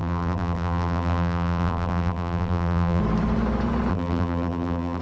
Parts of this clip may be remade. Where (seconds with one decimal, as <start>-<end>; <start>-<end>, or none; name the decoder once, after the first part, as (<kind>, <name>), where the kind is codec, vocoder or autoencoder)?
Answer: 0.0-3.0 (vocoder, BigVGAN v2); 3.9-5.0